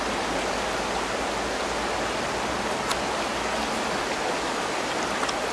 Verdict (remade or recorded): recorded